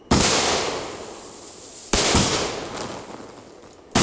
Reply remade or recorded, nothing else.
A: recorded